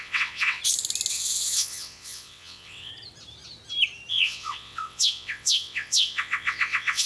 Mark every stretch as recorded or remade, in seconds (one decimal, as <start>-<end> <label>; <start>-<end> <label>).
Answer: 0.0-0.6 remade; 0.6-1.1 recorded; 1.1-2.9 remade; 2.9-4.1 recorded; 4.1-7.1 remade